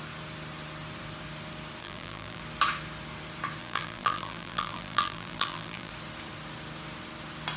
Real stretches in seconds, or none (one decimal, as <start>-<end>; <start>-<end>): 0.0-1.8; 2.4-3.6; 5.9-7.6